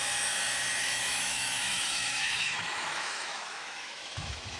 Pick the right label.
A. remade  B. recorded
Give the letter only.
A